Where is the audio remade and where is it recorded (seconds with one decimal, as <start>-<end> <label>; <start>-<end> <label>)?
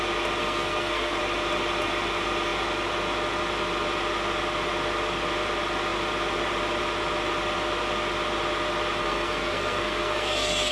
0.0-0.4 recorded; 0.4-1.2 remade; 1.2-9.0 recorded; 9.0-10.7 remade